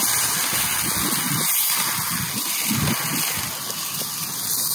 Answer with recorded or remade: recorded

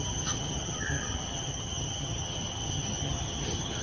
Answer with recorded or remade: remade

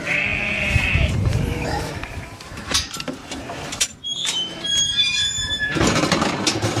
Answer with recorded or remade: remade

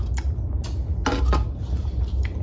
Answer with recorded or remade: recorded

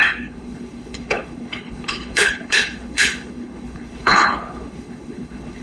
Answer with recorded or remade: remade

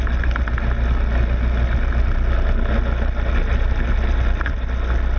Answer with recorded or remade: recorded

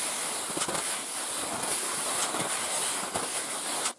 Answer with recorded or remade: recorded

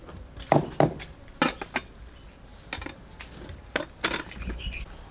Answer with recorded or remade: recorded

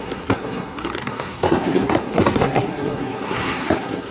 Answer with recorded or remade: remade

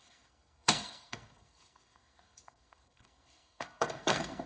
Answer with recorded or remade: remade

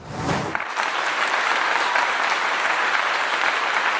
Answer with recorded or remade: remade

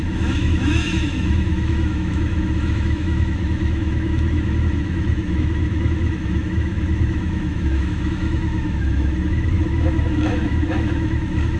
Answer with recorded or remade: remade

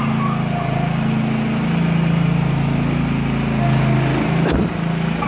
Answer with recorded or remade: recorded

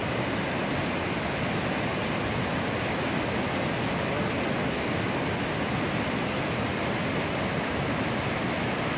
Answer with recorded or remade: recorded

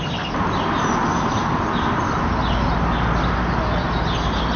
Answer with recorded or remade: recorded